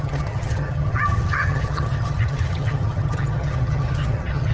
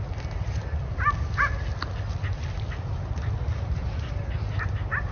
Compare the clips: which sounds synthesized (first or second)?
first